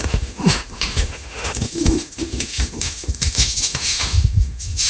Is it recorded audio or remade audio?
remade